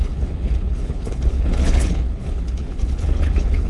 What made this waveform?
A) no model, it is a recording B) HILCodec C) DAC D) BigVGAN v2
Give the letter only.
B